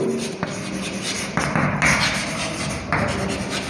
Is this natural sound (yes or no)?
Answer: yes